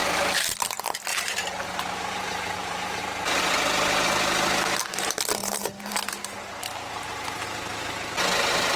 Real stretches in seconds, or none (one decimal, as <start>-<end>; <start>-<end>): 0.6-1.1; 3.0-5.4; 6.2-8.8